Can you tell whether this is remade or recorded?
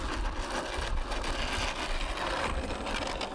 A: recorded